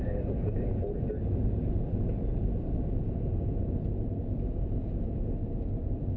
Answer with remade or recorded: recorded